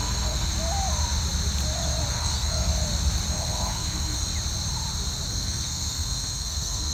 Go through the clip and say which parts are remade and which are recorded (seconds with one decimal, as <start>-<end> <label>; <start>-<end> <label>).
0.0-0.5 remade; 0.5-2.1 recorded; 2.1-2.7 remade; 2.7-3.3 recorded; 3.3-4.3 remade; 4.3-5.3 recorded; 5.3-6.9 remade